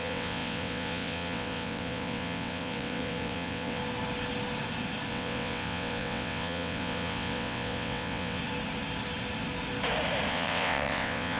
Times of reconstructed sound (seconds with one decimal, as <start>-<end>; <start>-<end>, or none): 0.0-3.8; 5.1-8.4; 10.3-11.4